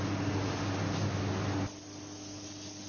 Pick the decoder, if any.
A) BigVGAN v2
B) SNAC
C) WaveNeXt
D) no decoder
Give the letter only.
D